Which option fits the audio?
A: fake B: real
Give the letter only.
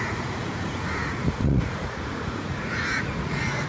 A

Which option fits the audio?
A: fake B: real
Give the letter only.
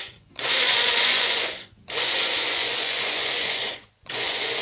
A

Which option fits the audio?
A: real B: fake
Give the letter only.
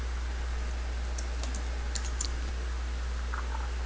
A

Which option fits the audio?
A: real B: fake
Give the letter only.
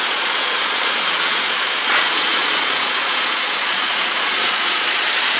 B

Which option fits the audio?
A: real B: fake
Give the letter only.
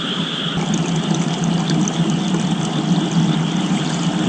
A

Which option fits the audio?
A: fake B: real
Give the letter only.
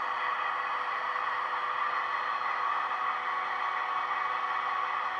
B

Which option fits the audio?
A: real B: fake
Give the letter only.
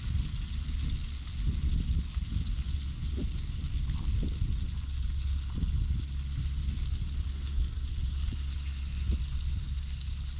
A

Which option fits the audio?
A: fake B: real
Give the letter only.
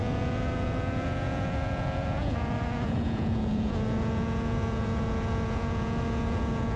A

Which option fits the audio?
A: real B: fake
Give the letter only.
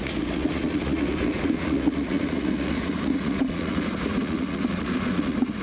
B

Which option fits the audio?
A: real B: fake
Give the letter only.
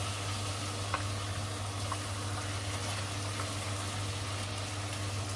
A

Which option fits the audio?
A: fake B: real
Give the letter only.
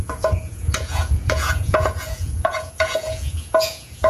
A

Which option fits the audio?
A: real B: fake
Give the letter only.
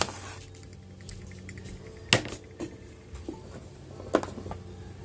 A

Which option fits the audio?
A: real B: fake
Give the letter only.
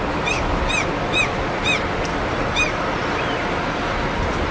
A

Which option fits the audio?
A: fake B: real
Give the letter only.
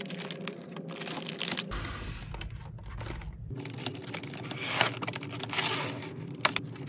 B